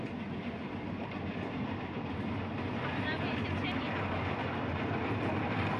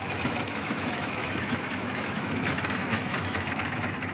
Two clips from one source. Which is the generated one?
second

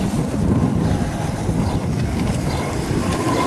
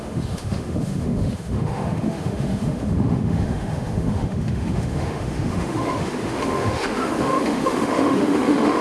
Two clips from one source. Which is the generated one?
second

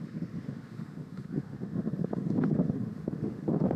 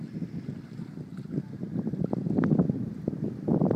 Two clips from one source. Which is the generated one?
first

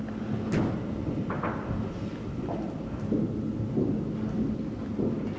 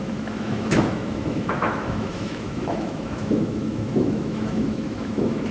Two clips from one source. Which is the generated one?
second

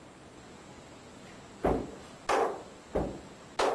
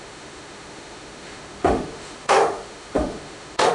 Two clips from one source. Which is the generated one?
second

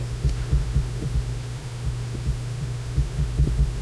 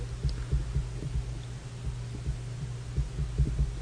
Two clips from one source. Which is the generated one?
first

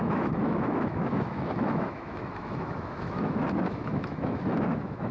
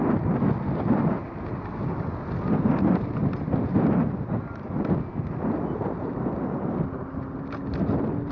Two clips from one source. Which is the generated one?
first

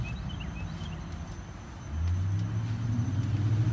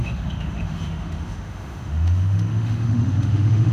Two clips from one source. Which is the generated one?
second